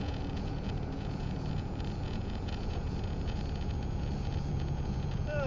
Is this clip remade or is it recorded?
remade